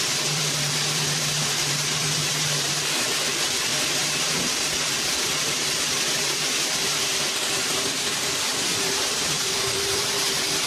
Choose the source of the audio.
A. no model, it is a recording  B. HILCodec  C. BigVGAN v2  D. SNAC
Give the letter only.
C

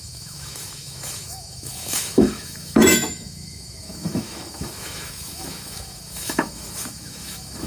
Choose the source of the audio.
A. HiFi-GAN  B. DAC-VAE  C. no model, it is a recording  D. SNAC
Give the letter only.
B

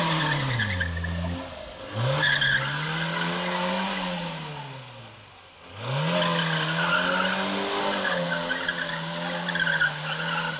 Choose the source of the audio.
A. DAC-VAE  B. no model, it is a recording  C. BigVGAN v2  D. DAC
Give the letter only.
B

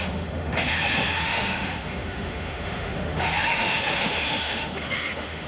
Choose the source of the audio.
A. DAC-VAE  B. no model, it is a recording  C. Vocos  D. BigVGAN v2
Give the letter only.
A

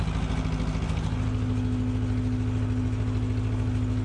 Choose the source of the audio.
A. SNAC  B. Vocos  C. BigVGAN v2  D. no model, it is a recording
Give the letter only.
D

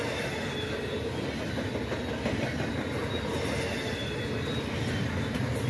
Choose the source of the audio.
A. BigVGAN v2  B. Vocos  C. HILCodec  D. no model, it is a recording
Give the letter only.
D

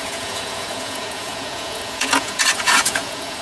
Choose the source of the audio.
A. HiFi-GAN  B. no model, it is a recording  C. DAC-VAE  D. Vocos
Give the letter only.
D